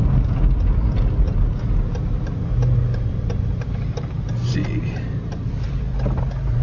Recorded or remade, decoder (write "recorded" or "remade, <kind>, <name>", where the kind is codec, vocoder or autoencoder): recorded